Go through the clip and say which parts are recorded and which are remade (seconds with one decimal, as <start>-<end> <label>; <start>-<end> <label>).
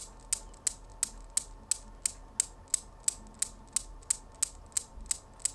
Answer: 0.0-5.5 recorded